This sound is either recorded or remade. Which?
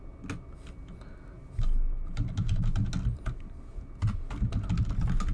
recorded